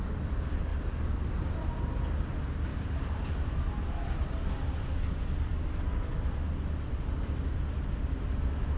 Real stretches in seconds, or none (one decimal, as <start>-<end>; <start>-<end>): 0.0-0.7; 1.3-8.8